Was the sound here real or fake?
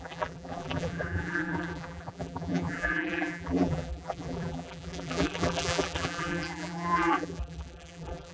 fake